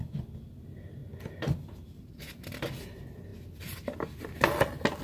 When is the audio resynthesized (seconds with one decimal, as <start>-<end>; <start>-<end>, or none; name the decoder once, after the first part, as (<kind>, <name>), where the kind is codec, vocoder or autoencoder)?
none